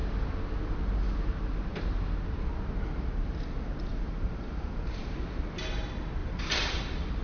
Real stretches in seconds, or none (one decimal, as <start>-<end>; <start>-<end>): 0.0-3.9; 4.8-6.2; 6.8-7.2